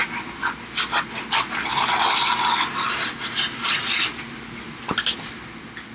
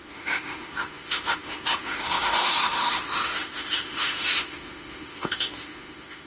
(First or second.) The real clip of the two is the first